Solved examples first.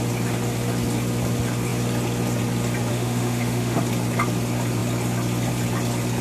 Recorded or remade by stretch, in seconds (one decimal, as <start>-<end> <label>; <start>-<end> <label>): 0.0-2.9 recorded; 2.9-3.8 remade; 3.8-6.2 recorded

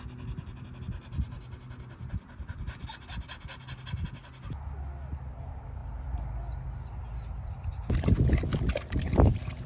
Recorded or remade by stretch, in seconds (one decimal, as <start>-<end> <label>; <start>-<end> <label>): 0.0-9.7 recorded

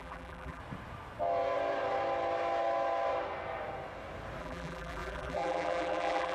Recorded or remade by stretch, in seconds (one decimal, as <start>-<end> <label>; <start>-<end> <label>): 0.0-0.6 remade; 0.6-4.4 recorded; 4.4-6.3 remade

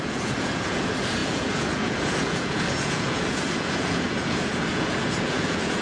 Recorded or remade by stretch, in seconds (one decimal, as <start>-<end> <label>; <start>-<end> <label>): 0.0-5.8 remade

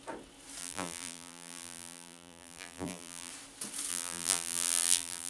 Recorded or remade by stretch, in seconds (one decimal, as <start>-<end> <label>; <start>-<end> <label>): 0.0-0.6 recorded; 0.6-3.3 remade; 3.3-3.9 recorded; 3.9-5.3 remade

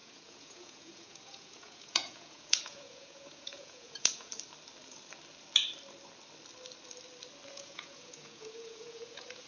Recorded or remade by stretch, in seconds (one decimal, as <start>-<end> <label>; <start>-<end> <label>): 0.0-4.3 remade; 4.3-7.5 recorded; 7.5-9.5 remade